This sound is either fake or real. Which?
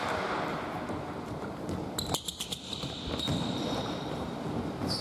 real